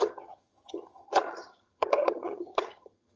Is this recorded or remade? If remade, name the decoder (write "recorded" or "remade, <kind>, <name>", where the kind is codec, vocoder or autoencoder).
remade, vocoder, HiFi-GAN